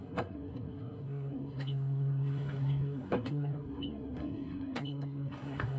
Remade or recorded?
remade